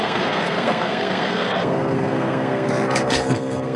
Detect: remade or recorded remade